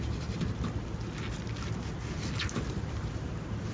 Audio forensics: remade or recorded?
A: recorded